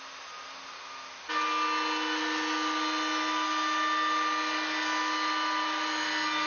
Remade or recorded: recorded